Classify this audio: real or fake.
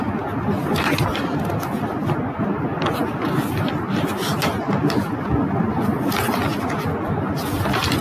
real